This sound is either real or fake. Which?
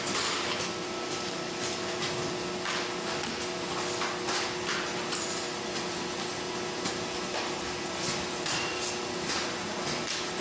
real